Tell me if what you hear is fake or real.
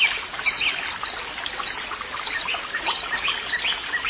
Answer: real